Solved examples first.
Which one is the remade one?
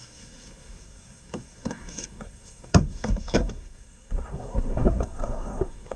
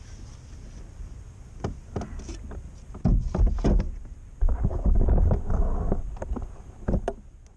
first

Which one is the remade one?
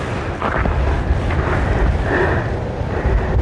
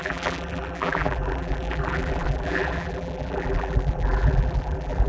second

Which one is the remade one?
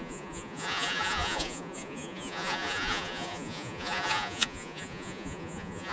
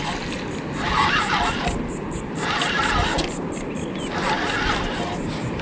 first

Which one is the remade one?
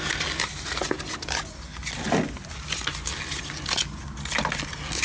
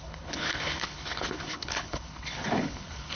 second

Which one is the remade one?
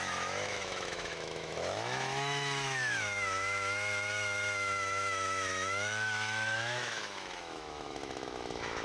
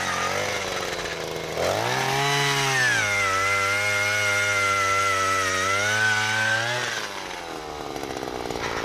first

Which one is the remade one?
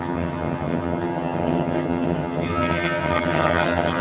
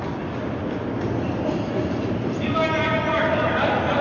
first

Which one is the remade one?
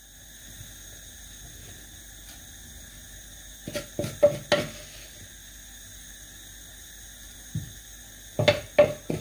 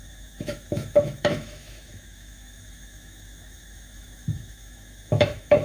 second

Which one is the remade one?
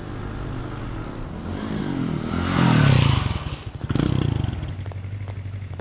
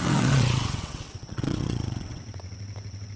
second